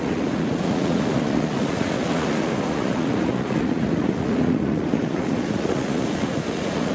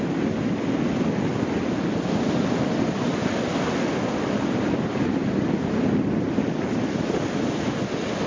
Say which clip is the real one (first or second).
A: second